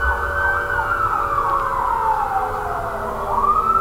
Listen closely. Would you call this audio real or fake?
real